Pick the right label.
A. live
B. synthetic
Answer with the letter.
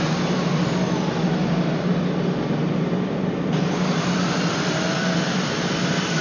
B